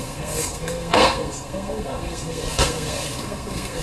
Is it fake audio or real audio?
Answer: fake